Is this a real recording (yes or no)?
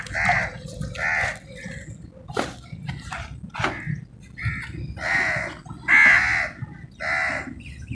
yes